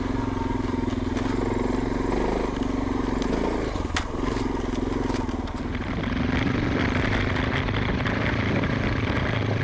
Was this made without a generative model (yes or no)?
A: yes